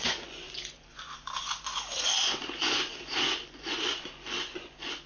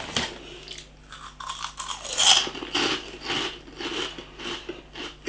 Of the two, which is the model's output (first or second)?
first